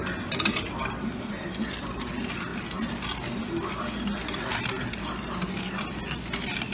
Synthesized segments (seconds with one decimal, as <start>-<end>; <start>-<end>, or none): none